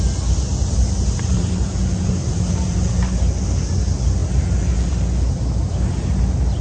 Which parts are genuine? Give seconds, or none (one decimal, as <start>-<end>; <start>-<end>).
0.0-0.5; 2.7-6.6